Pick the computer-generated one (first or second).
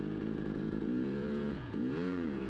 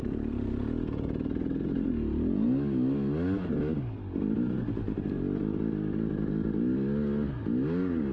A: first